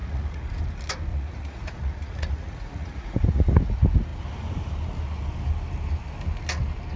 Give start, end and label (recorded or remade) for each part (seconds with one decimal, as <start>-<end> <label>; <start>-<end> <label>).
0.0-0.6 remade; 0.6-1.1 recorded; 1.1-3.6 remade; 3.6-7.0 recorded